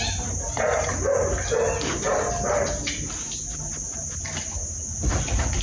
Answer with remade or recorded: recorded